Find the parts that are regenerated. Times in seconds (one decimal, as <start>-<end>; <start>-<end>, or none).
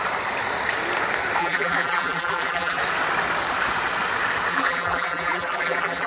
1.4-2.8; 4.5-6.1